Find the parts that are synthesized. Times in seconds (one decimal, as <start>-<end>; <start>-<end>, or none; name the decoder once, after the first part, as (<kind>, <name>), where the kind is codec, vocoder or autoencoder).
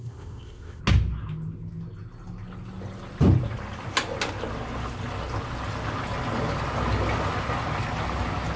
0.0-0.8 (codec, ZipCodec)